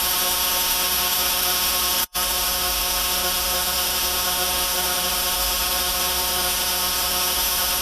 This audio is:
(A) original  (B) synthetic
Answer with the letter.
B